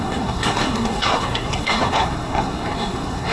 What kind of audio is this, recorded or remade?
remade